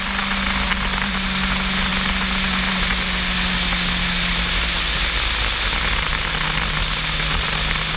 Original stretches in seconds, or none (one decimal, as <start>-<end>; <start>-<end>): 0.0-8.0